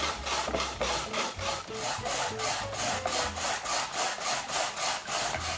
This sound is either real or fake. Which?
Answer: real